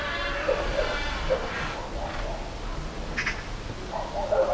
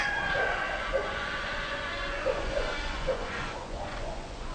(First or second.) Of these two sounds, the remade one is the second